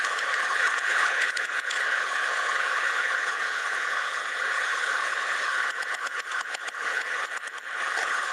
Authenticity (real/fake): fake